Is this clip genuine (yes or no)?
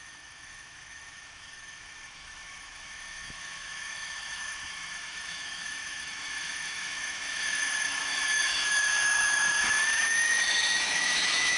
no